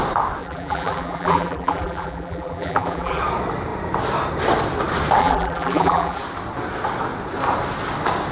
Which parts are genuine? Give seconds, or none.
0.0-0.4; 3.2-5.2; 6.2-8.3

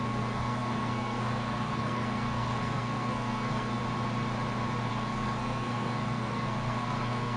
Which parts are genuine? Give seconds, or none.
3.8-4.9

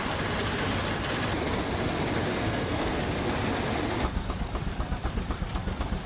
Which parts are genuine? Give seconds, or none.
0.0-2.3; 3.0-6.1

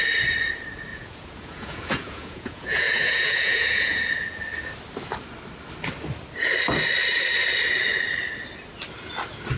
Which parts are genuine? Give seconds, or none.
0.0-0.9; 4.4-9.6

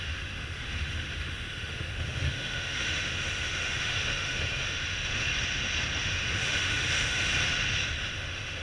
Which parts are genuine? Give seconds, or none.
5.3-6.0; 7.3-8.0

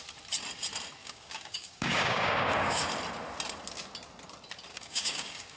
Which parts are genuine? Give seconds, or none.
0.0-1.0; 2.9-4.7